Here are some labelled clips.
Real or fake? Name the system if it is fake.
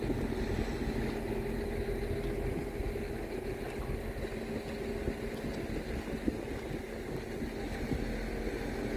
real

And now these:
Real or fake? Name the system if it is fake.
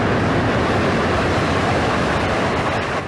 real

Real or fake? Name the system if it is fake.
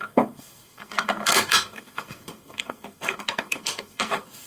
fake, codec, SNAC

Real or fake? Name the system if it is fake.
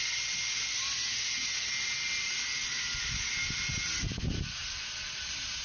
real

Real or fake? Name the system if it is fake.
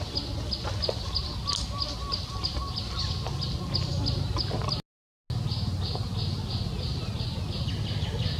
real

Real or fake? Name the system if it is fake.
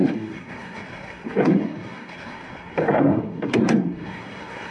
fake, codec, SNAC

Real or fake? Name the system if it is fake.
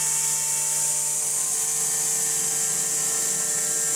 real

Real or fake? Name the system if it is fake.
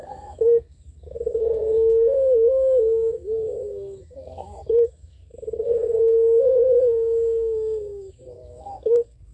fake, codec, SNAC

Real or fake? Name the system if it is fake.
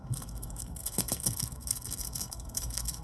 fake, codec, SNAC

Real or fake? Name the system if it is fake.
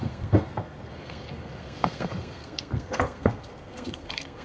fake, codec, SNAC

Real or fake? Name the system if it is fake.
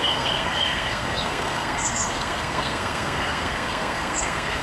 fake, codec, SNAC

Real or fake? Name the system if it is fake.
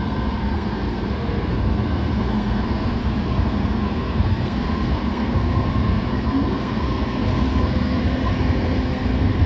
fake, codec, SNAC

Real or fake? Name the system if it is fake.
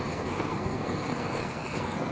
fake, codec, SNAC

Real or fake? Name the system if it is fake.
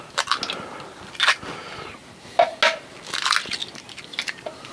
real